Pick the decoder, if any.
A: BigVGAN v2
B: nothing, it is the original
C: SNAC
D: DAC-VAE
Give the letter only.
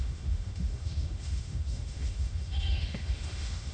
D